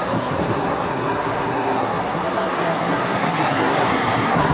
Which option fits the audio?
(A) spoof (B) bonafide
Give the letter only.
A